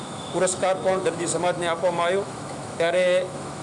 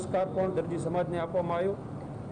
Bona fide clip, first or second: second